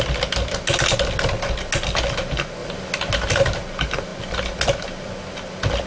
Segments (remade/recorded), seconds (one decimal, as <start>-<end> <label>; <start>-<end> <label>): 0.0-5.9 recorded